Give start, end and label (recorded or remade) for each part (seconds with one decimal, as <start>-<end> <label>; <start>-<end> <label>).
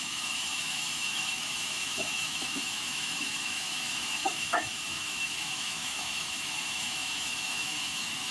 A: 0.0-8.3 remade